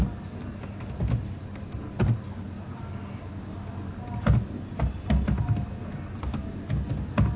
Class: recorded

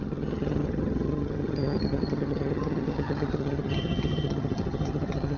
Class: remade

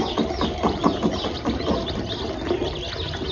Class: recorded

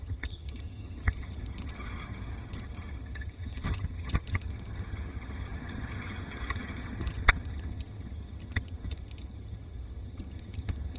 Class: remade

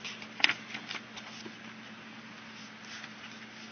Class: recorded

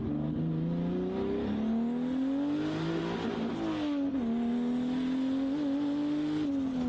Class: recorded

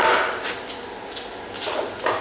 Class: recorded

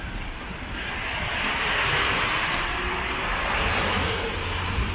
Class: recorded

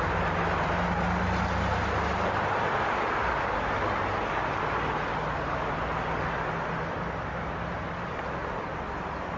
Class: recorded